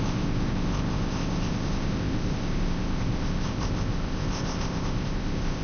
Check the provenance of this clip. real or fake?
fake